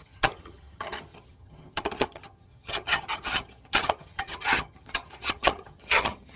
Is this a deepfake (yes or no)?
yes